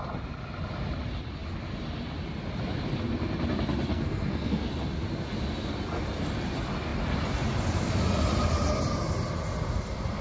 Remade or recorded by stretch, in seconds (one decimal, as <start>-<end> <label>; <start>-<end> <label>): 0.0-3.9 recorded; 3.9-4.7 remade; 4.7-10.2 recorded

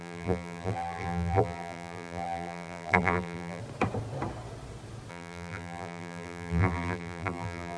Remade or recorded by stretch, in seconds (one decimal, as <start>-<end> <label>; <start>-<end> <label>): 0.0-3.6 remade; 3.6-5.1 recorded; 5.1-7.8 remade

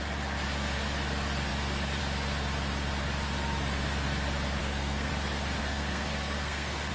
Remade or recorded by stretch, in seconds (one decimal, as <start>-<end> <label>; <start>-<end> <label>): 0.0-4.6 recorded; 4.6-5.1 remade; 5.1-5.6 recorded; 5.6-6.9 remade

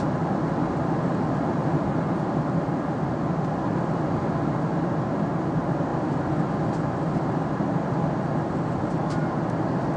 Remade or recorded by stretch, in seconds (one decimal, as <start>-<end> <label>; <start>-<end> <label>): 0.0-10.0 recorded

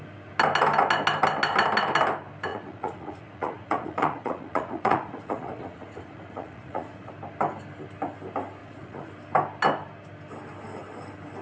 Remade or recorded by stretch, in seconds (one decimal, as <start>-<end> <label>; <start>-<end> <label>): 0.0-2.5 recorded; 2.5-7.1 remade; 7.1-8.6 recorded; 8.6-9.1 remade; 9.1-11.4 recorded

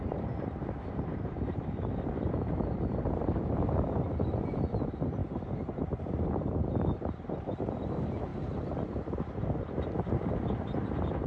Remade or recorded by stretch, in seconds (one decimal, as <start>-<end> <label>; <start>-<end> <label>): 0.0-11.3 remade

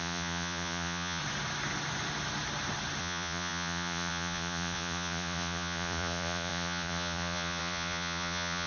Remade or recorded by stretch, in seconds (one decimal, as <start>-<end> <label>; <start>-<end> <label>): 0.0-1.2 remade; 1.2-3.0 recorded; 3.0-8.7 remade